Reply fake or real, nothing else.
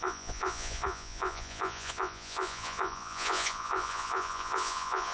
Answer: fake